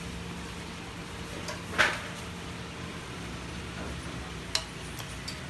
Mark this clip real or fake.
real